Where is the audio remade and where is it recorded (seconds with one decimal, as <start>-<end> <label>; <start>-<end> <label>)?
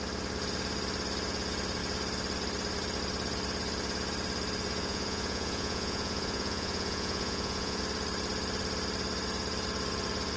0.0-4.8 recorded; 4.8-7.8 remade; 7.8-10.4 recorded